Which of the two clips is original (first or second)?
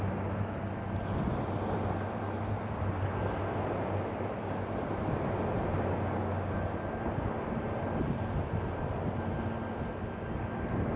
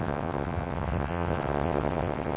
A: first